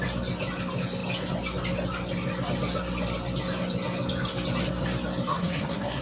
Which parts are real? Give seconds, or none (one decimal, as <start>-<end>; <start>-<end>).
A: 0.0-5.3